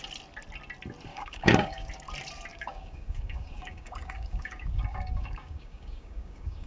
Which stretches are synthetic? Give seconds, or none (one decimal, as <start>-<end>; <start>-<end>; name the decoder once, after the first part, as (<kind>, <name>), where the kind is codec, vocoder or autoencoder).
1.1-1.9 (codec, DAC); 2.5-6.7